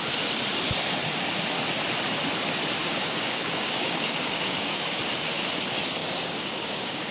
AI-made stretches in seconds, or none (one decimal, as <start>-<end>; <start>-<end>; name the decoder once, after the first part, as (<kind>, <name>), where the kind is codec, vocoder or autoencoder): 2.8-5.0 (codec, DAC); 6.0-7.1